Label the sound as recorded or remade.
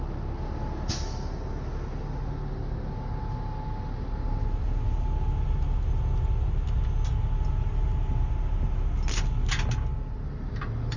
recorded